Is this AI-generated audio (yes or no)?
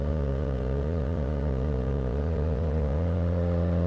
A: yes